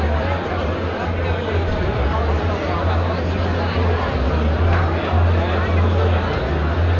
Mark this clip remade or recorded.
recorded